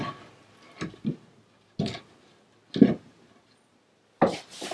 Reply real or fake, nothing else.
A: real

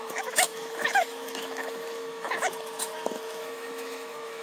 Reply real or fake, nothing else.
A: fake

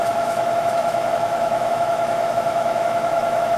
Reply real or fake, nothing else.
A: fake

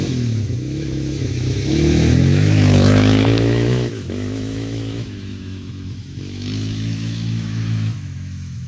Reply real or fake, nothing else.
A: fake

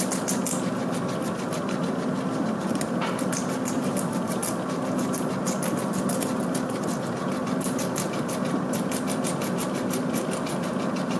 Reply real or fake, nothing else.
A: real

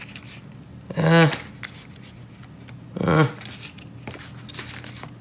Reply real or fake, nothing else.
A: real